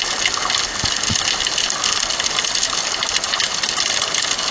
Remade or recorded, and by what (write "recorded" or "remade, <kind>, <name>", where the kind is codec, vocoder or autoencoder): recorded